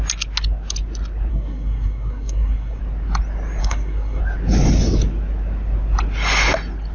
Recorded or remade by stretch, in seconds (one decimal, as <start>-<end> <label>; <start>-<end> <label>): 0.0-1.3 recorded; 1.3-2.8 remade; 2.8-3.6 recorded; 3.6-4.2 remade; 4.2-6.9 recorded